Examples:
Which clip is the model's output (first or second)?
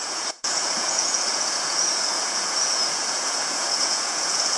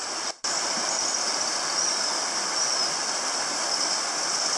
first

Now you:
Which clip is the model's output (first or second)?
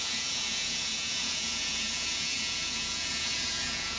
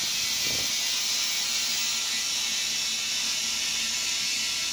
first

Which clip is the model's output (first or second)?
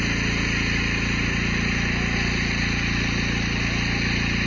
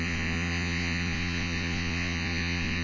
second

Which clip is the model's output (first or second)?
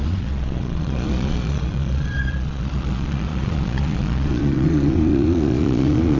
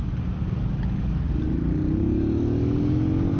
first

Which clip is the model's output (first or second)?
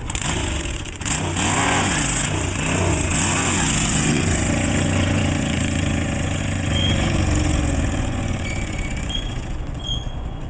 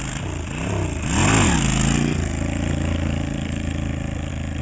first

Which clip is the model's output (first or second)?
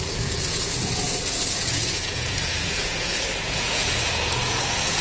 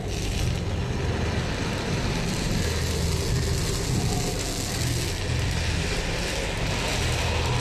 first